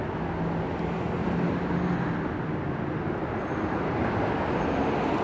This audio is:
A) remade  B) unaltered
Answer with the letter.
B